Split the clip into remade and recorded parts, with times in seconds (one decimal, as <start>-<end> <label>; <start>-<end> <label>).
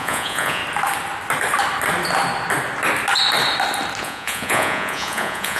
0.0-0.6 remade; 0.6-4.0 recorded; 4.0-5.6 remade